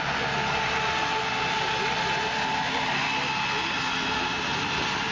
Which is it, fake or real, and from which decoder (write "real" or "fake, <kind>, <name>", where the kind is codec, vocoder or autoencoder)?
real